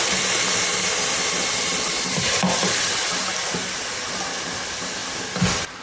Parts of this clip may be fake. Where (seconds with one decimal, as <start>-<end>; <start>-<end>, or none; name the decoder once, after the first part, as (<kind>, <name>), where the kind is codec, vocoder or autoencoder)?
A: none